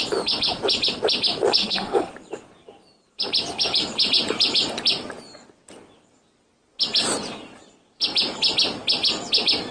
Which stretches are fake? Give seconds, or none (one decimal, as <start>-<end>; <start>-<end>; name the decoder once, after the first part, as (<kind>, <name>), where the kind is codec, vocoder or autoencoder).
1.6-2.1 (codec, SNAC)